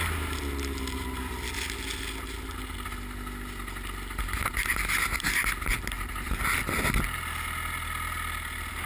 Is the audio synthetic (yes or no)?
no